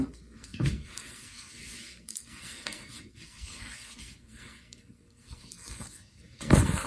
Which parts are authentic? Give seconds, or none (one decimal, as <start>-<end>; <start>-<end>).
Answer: none